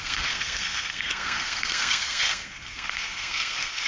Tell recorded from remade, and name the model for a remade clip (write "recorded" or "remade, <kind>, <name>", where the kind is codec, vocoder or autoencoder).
remade, codec, SNAC